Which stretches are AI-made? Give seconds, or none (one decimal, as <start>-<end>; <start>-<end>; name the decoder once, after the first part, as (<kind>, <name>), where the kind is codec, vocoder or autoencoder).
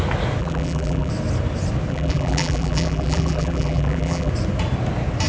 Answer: 0.4-1.1 (vocoder, BigVGAN v2); 1.9-4.3